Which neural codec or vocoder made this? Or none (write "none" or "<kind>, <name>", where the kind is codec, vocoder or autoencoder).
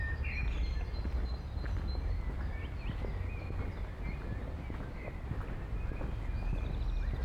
none